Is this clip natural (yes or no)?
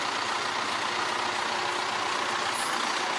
yes